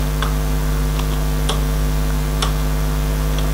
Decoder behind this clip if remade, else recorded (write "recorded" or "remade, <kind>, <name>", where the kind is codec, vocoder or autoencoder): recorded